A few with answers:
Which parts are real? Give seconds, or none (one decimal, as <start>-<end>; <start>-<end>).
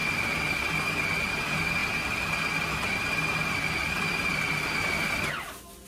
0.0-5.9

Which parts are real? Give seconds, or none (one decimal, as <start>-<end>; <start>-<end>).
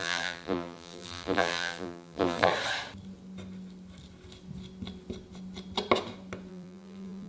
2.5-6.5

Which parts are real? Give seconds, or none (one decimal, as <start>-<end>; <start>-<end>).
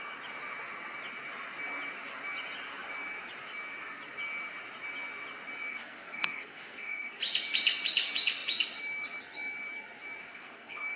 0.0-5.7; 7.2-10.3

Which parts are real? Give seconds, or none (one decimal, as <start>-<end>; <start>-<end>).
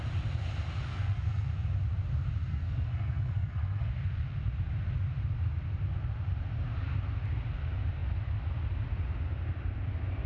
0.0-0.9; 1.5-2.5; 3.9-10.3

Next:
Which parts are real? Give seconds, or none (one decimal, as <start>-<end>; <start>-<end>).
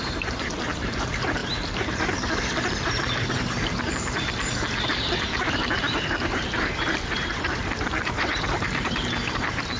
none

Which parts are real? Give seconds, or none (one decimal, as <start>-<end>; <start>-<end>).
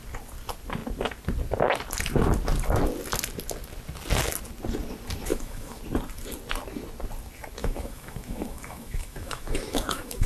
0.0-5.3; 5.8-7.6